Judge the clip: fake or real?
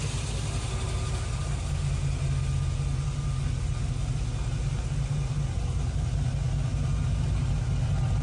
real